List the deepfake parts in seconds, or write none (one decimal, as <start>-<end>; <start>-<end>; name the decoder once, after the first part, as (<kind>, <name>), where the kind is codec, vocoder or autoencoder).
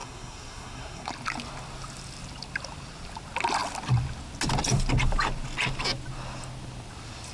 0.0-1.1 (codec, SNAC)